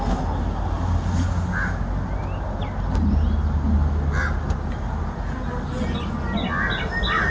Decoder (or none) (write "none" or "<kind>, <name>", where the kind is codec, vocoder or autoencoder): none